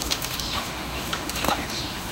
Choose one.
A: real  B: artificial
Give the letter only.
B